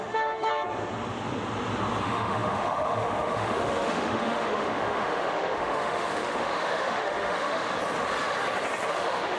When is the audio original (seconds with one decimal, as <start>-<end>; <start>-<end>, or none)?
0.5-2.0; 7.7-8.9